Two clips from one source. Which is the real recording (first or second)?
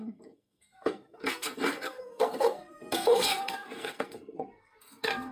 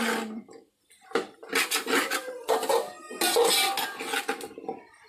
second